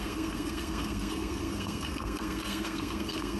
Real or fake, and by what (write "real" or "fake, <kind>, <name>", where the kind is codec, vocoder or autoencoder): fake, codec, SNAC